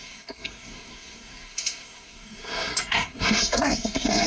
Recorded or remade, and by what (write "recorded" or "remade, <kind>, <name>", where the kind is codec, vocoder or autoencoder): remade, codec, SNAC